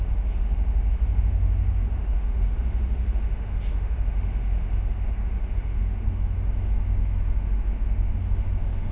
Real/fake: fake